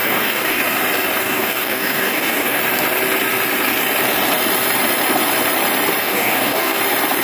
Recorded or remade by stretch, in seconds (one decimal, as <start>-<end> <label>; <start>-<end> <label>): 0.0-0.6 remade; 0.6-1.2 recorded; 1.2-2.6 remade; 2.6-6.0 recorded; 6.0-6.8 remade; 6.8-7.2 recorded